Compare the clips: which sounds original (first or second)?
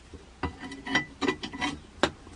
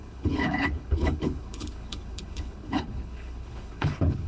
first